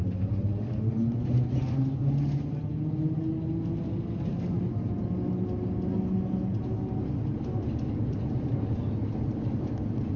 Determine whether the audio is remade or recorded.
recorded